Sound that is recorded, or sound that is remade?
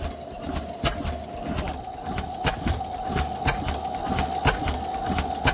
recorded